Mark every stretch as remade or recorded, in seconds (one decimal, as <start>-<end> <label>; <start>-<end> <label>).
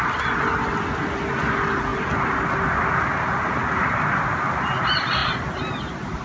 0.0-6.2 recorded